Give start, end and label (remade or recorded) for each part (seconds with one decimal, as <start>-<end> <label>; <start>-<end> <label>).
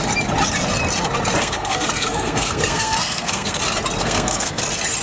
0.0-1.4 recorded; 1.4-3.6 remade; 3.6-4.0 recorded; 4.0-4.6 remade; 4.6-5.0 recorded